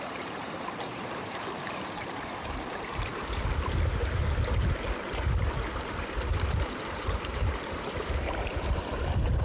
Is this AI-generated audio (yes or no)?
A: yes